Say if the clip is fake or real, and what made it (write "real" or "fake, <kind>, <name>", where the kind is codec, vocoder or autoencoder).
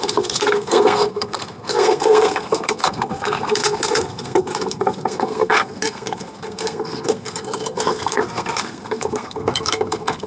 fake, codec, SNAC